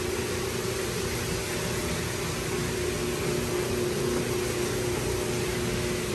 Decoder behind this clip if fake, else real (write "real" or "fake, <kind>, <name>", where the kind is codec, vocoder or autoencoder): real